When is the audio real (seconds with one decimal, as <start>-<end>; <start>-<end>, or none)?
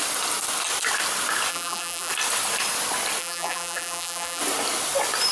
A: 0.0-1.5; 2.1-3.2; 4.4-5.3